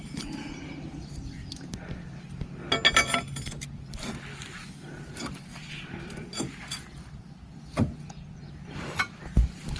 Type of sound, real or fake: real